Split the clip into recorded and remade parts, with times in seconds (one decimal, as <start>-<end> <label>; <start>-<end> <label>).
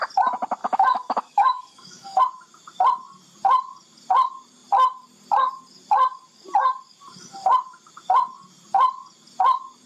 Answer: 0.0-0.6 recorded; 0.6-2.2 remade; 2.2-9.9 recorded